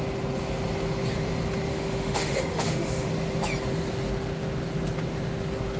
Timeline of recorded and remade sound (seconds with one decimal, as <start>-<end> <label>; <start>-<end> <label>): 0.0-1.7 recorded; 1.7-3.1 remade; 3.1-5.8 recorded